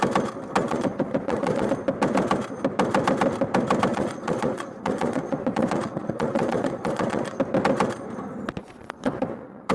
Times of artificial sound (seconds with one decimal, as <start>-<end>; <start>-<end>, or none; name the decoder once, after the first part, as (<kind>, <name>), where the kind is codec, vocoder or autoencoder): 0.6-1.7 (vocoder, Vocos); 3.9-7.4; 8.6-9.7

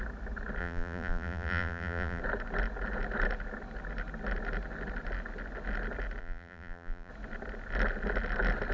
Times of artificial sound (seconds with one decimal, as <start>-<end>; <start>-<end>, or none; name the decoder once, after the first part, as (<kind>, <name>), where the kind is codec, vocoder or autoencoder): 0.6-2.2 (vocoder, BigVGAN v2); 6.2-7.1

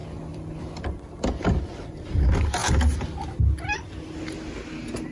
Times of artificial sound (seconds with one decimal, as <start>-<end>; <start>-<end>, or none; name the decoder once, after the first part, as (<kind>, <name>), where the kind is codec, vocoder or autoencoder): none

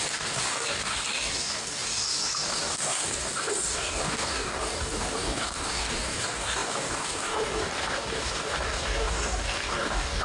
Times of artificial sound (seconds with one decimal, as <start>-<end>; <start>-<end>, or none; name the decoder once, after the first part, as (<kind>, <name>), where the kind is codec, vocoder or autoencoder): 0.0-10.2 (codec, DAC)